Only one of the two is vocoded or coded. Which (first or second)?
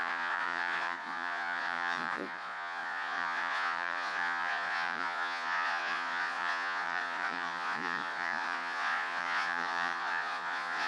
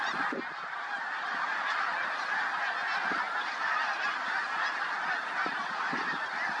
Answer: first